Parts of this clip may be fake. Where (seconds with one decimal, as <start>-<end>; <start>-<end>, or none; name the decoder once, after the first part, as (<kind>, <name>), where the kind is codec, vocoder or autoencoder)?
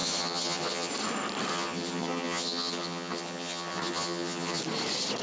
0.0-0.9 (vocoder, HiFi-GAN); 1.5-4.6